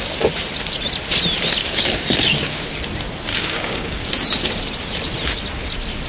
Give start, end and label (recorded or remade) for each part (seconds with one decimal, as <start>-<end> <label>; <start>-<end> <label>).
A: 0.0-1.6 recorded; 1.6-2.6 remade; 2.6-3.3 recorded; 3.3-4.1 remade; 4.1-6.1 recorded